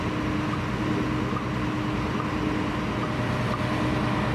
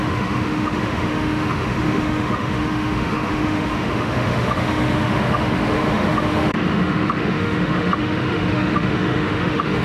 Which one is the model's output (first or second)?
second